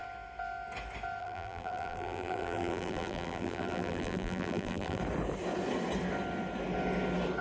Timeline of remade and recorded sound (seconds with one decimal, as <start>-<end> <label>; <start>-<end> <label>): 0.0-1.2 recorded; 1.2-5.0 remade; 5.0-7.4 recorded